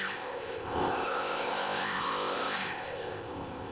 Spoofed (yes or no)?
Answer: yes